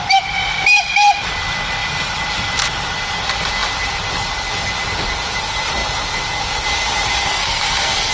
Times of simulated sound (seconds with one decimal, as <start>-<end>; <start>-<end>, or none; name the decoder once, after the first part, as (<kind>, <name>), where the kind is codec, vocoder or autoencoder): 7.3-8.1 (codec, SNAC)